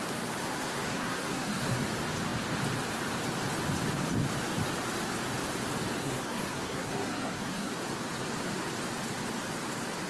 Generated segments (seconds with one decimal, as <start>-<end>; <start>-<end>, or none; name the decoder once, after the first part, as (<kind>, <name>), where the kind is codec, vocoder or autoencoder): 0.4-1.8 (codec, SNAC); 6.0-7.7